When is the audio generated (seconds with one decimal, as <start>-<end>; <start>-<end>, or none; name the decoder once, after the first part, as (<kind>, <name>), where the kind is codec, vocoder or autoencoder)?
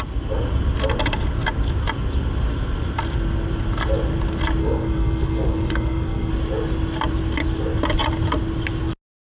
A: 4.6-6.3 (codec, SNAC)